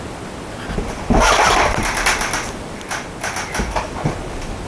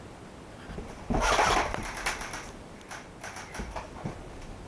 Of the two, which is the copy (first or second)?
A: second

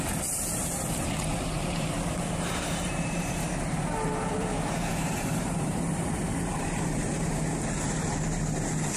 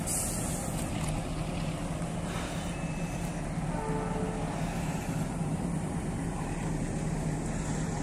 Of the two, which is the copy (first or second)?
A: first